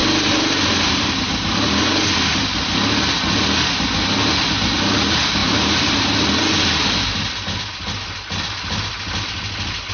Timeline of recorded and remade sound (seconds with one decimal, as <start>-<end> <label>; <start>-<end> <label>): 0.0-9.9 recorded